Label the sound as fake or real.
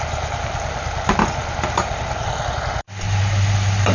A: real